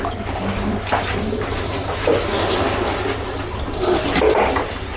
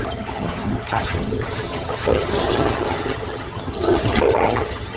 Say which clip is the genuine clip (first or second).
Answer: first